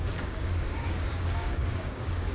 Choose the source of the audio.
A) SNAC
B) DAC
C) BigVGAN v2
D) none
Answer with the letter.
B